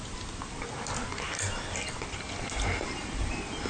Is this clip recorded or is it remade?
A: recorded